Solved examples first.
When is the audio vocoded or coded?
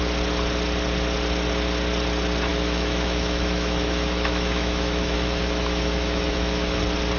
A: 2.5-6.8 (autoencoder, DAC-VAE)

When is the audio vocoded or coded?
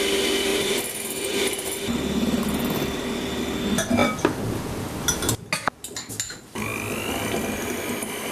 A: 0.5-2.4 (vocoder, BigVGAN v2)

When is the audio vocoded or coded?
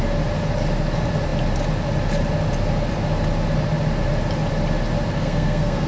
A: 5.2-5.9 (codec, SNAC)